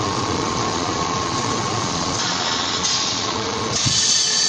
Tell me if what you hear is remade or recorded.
remade